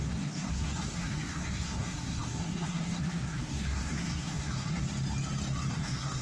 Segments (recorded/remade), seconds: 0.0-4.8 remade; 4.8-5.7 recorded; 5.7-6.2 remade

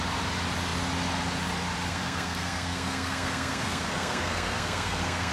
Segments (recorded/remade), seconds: 0.0-1.9 recorded; 1.9-5.3 remade

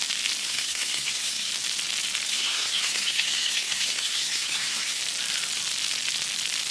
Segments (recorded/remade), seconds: 0.0-0.4 recorded; 0.4-1.5 remade; 1.5-2.3 recorded; 2.3-5.0 remade; 5.0-6.7 recorded

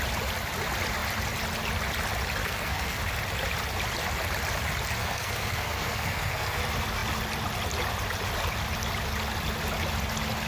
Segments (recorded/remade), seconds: 0.0-2.4 recorded; 2.4-3.0 remade; 3.0-5.0 recorded; 5.0-6.6 remade; 6.6-10.5 recorded

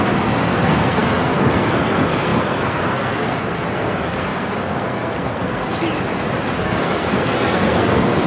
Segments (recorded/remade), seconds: 0.0-5.8 remade; 5.8-6.6 recorded; 6.6-8.3 remade